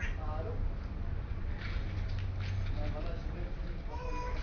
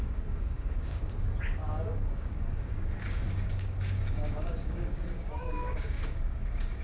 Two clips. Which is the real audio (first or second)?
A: first